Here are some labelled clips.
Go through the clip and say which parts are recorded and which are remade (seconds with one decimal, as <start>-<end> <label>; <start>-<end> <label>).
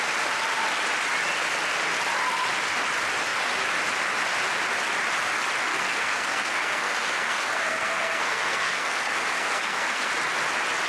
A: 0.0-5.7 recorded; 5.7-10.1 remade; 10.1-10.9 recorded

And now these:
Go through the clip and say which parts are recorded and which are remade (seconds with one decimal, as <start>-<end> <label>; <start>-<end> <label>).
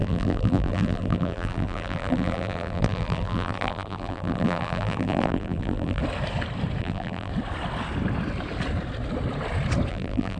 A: 0.0-6.0 remade; 6.0-6.8 recorded; 6.8-7.3 remade; 7.3-9.9 recorded; 9.9-10.4 remade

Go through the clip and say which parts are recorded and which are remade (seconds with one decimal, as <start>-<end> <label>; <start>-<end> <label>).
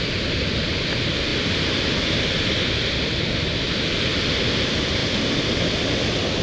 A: 0.0-6.4 recorded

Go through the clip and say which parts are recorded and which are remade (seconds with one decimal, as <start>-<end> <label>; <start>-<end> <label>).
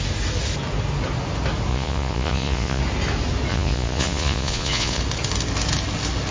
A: 0.0-1.7 recorded; 1.7-2.8 remade; 2.8-3.5 recorded; 3.5-5.0 remade; 5.0-6.3 recorded